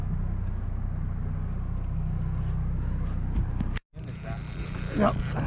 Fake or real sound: real